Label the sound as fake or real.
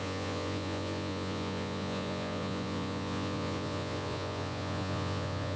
fake